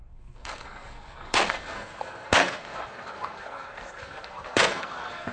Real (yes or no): no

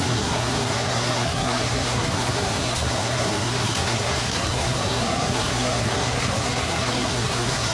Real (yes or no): no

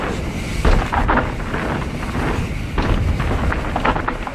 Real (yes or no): yes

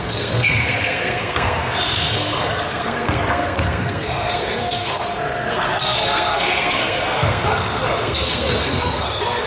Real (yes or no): no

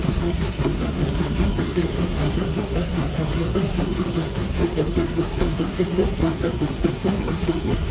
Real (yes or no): no